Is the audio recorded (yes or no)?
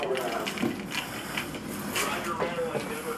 yes